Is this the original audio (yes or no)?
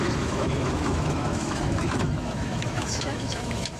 no